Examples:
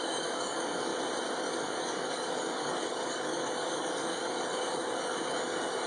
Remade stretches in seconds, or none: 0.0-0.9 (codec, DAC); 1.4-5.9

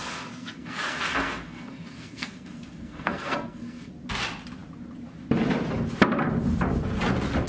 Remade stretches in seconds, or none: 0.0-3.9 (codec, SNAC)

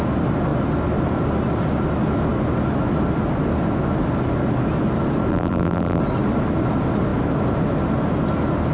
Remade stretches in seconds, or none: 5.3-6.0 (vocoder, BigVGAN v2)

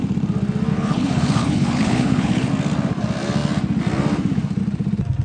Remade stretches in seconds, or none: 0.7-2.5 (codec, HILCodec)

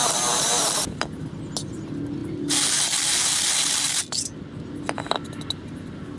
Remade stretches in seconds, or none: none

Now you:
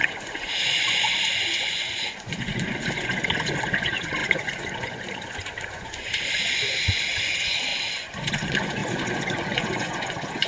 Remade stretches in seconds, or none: 0.0-10.5 (vocoder, Vocos)